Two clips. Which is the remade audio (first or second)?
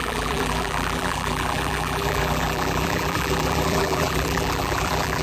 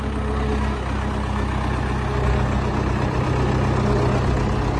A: first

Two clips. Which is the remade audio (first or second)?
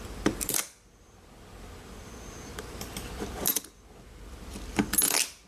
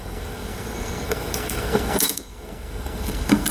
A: second